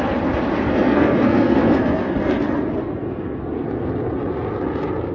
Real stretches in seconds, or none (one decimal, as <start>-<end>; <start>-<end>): 0.0-0.7; 2.3-2.8; 3.4-5.1